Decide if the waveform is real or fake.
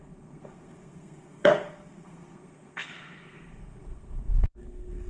fake